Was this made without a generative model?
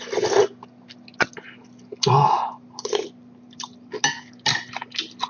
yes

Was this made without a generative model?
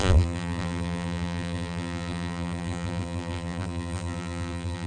no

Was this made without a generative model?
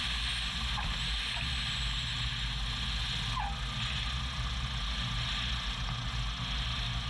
yes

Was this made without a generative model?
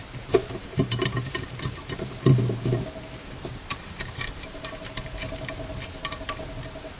no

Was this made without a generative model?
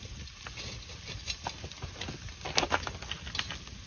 yes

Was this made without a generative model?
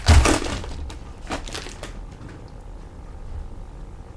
yes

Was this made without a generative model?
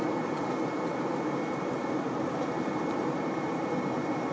no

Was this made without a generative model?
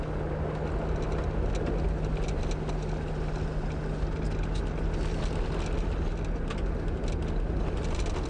yes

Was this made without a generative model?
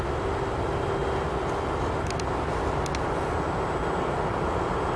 yes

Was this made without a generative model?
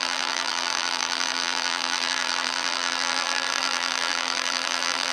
no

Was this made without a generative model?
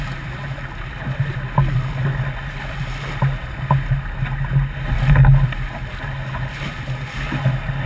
yes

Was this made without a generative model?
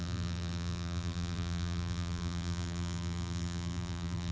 no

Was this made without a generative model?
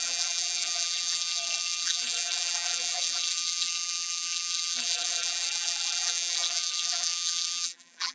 no